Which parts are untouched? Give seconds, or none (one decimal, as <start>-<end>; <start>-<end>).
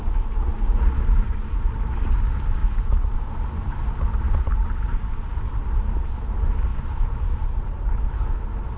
0.0-8.8